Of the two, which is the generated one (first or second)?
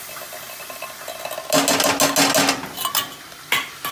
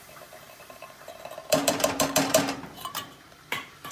second